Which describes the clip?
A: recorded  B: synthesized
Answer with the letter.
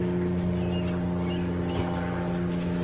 A